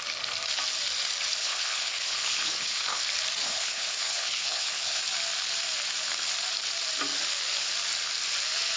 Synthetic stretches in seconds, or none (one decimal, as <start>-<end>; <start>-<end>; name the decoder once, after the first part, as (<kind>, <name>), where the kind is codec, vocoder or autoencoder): 1.4-3.0 (codec, HILCodec); 3.4-5.0